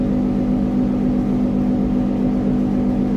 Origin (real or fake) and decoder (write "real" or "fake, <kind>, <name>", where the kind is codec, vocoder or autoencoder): real